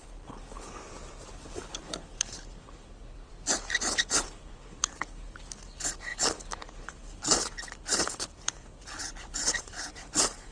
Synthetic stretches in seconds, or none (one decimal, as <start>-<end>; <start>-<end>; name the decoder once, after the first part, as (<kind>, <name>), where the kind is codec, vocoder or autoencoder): 0.0-0.8 (codec, HILCodec); 1.3-3.3; 4.0-10.5